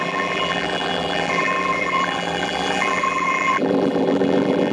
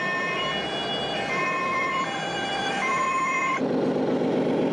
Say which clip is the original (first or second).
second